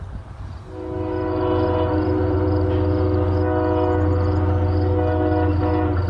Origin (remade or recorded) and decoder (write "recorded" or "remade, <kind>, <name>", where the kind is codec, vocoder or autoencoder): recorded